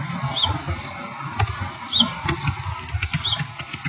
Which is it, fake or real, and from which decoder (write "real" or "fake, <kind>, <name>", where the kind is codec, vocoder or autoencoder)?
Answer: real